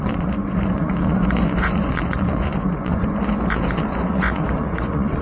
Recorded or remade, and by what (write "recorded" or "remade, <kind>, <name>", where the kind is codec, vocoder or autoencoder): remade, vocoder, Vocos